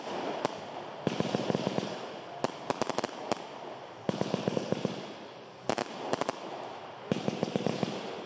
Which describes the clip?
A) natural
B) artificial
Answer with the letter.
A